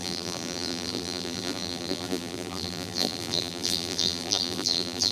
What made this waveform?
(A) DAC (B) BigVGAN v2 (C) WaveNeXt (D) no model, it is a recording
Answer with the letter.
B